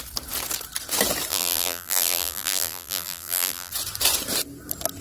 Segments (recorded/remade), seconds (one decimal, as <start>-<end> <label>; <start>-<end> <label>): 0.0-1.3 recorded; 1.3-3.7 remade; 3.7-5.0 recorded